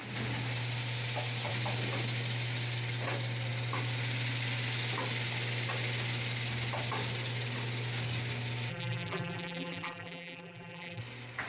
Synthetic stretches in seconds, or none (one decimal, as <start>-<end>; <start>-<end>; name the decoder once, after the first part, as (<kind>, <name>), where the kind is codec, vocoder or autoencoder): 8.7-11.0 (vocoder, BigVGAN v2)